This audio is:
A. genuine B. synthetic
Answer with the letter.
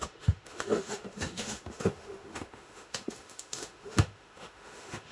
B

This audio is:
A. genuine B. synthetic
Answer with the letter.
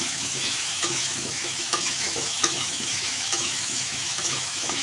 B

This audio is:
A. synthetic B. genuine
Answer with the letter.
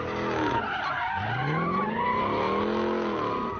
B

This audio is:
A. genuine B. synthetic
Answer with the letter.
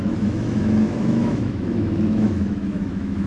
B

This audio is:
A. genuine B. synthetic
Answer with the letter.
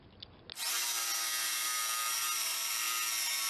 A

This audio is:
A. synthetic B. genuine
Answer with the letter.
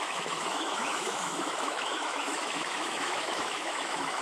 A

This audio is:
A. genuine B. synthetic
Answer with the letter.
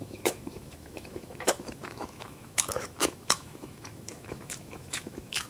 B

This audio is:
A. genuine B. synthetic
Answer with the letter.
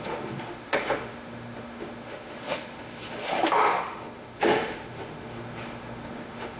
B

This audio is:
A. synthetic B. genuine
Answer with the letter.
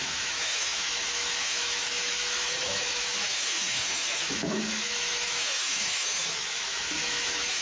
A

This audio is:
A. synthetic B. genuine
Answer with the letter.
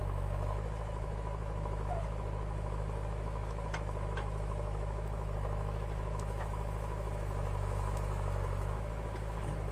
A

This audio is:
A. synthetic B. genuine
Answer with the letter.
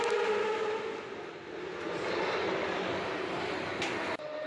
B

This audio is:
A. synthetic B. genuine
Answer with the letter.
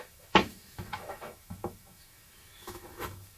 A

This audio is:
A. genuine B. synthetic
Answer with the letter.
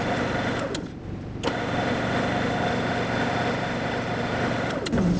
A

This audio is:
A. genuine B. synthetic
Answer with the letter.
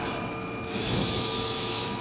B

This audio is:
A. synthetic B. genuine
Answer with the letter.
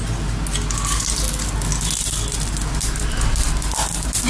B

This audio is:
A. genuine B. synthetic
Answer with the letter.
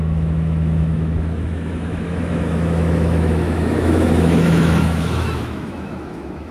B